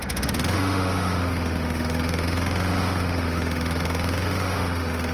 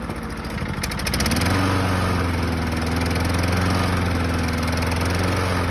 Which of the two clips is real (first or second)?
second